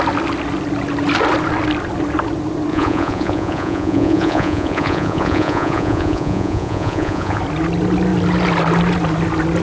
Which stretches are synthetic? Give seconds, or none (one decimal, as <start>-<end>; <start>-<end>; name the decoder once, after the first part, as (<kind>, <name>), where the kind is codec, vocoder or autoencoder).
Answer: 2.7-7.4 (vocoder, Vocos)